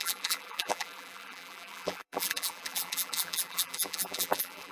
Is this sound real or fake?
fake